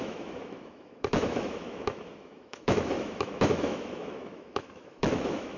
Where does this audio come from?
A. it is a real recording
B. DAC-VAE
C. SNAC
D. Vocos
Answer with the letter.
B